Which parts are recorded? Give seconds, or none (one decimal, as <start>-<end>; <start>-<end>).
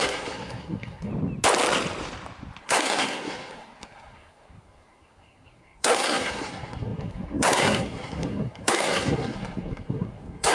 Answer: 1.1-2.6